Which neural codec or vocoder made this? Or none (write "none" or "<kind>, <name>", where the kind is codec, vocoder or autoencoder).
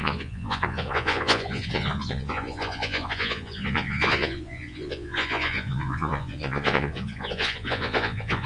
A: vocoder, Vocos